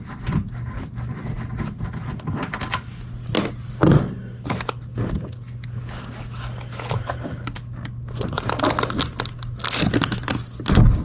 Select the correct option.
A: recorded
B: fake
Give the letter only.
A